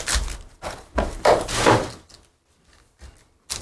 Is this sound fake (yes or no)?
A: no